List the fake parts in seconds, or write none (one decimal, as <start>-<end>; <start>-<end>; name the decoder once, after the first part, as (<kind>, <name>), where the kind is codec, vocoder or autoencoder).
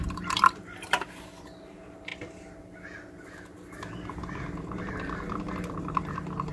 0.0-1.4 (vocoder, BigVGAN v2)